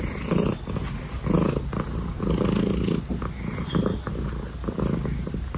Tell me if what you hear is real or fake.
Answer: real